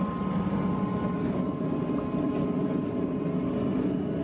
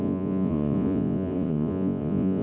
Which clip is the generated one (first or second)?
second